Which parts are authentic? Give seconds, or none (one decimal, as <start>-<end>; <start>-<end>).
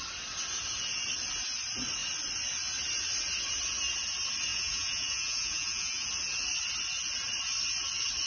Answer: 0.0-4.5; 6.1-8.3